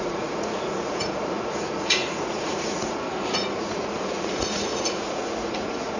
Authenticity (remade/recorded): remade